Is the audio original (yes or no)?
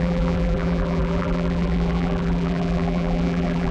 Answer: no